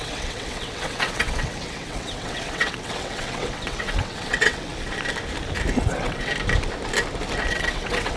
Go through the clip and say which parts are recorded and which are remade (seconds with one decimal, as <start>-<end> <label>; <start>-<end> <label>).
0.0-4.7 remade; 4.7-5.8 recorded; 5.8-6.3 remade; 6.3-7.5 recorded; 7.5-8.2 remade